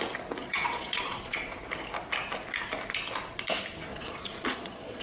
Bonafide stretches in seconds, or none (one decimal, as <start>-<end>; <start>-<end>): 0.0-0.4; 1.6-3.9